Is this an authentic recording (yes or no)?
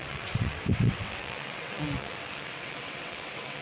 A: no